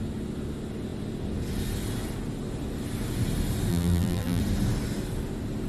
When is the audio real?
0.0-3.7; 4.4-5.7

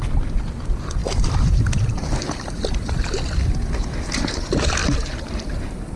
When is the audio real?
0.0-1.0; 3.1-4.8; 5.5-6.0

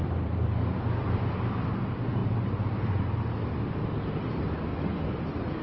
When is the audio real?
1.8-2.2; 2.8-4.7

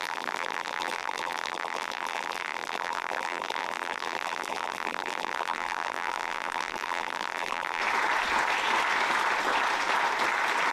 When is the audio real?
7.8-10.7

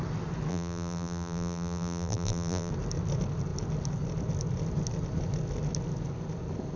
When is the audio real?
0.0-0.5; 2.7-6.8

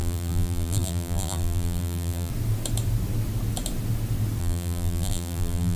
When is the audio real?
2.3-4.4